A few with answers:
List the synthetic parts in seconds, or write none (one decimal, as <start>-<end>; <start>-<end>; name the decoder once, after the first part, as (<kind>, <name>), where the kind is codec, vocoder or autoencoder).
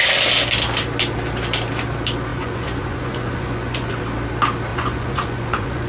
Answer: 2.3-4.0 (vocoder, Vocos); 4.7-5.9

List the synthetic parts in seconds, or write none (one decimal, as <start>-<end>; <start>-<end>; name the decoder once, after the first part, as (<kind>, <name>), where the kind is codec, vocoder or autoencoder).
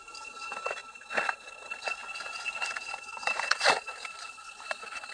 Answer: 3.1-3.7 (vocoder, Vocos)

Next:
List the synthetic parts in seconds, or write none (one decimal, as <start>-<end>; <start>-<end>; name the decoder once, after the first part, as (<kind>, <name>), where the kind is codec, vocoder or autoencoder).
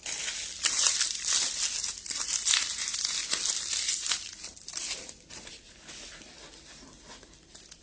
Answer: none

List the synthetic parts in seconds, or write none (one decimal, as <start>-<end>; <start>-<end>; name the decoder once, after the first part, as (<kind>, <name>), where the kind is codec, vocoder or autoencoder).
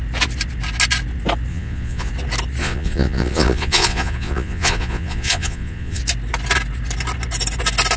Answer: 1.5-2.1 (vocoder, Vocos); 2.6-6.0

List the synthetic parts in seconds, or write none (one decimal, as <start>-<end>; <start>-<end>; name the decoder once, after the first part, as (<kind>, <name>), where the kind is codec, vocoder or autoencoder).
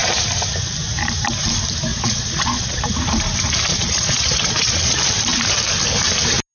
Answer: 1.9-2.9 (vocoder, Vocos); 3.7-4.8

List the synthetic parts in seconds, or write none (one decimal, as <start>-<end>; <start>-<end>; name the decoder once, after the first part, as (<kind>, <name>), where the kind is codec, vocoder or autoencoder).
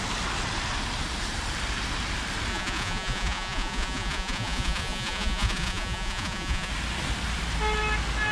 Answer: 2.5-6.7 (vocoder, Vocos)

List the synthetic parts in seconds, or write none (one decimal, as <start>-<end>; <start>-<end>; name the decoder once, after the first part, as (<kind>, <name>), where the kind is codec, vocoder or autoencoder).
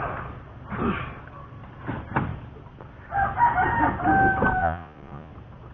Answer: 4.6-5.3 (vocoder, Vocos)